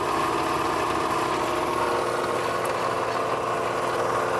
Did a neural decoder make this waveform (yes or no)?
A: no